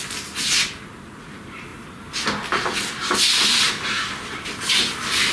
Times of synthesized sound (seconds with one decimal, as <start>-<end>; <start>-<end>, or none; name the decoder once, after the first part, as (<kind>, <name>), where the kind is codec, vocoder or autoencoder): none